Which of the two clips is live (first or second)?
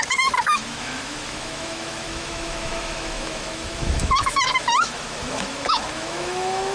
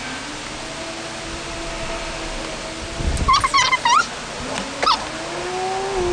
second